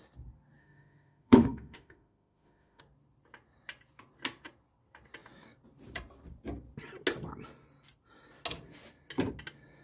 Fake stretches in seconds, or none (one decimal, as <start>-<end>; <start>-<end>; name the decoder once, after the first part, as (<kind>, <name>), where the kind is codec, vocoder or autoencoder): 0.6-2.8 (autoencoder, DAC-VAE)

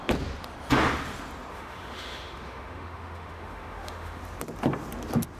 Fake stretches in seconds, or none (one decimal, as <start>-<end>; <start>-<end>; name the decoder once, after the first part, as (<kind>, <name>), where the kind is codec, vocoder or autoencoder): 1.5-4.2 (autoencoder, DAC-VAE)

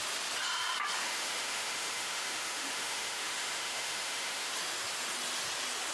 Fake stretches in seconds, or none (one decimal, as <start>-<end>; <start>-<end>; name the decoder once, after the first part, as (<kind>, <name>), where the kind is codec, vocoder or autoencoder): 1.0-4.5 (autoencoder, DAC-VAE)